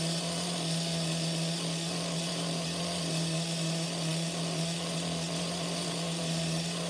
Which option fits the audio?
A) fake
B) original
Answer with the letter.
B